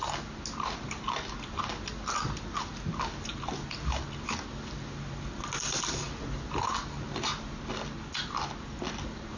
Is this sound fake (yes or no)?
no